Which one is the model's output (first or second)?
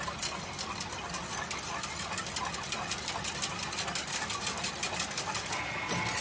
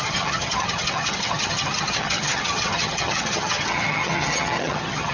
second